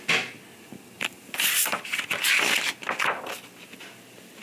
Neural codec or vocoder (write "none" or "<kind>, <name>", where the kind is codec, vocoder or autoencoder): none